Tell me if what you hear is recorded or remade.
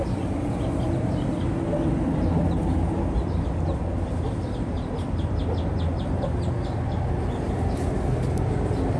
recorded